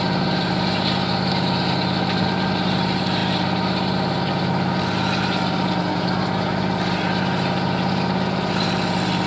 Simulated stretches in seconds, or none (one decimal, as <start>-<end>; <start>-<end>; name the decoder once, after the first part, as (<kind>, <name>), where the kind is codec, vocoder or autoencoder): none